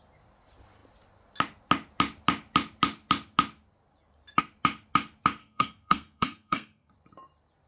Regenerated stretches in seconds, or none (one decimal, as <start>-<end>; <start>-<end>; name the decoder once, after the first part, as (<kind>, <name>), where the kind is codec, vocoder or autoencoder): 5.4-6.9 (codec, SNAC)